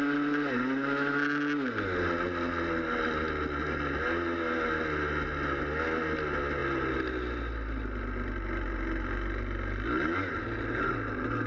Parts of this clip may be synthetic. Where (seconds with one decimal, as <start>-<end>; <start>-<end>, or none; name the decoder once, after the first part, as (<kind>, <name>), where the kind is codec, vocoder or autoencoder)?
none